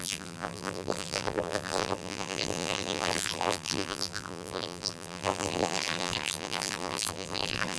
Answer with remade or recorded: remade